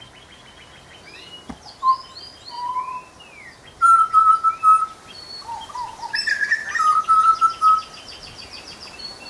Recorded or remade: recorded